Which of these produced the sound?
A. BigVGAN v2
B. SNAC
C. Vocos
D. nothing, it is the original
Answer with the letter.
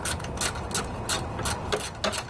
D